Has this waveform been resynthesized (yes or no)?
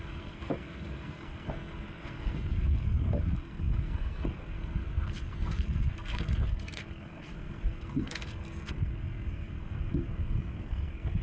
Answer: yes